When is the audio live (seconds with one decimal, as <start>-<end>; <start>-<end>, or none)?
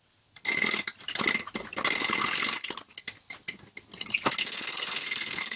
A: 0.0-4.4